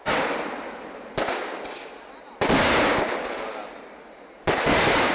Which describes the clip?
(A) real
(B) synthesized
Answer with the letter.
A